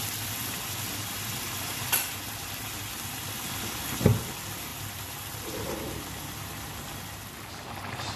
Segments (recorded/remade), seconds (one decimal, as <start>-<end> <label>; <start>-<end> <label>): 0.0-4.7 recorded; 4.7-5.9 remade; 5.9-8.2 recorded